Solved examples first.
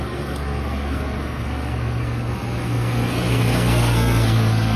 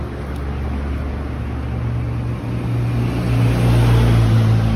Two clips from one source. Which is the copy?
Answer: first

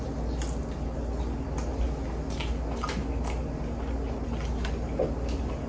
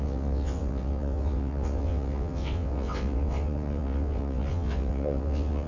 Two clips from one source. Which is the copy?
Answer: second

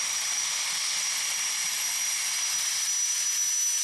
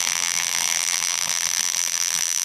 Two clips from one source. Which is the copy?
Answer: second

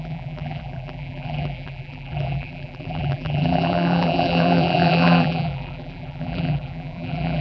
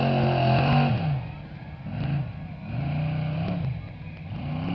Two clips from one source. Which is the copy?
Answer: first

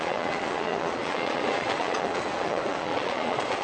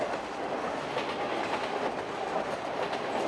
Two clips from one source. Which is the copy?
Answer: first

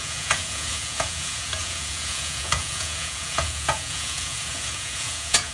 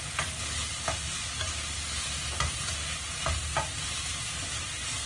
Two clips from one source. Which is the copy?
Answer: first